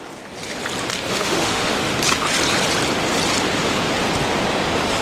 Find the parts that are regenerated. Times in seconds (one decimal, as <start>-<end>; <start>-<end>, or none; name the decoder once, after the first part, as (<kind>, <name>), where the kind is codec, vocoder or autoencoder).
1.1-1.9 (autoencoder, DAC-VAE)